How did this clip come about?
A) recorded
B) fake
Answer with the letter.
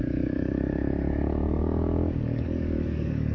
B